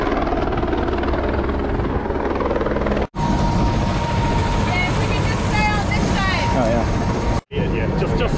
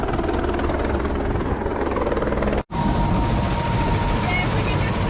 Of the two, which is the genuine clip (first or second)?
first